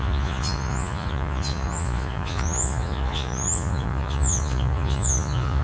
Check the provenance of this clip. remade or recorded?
remade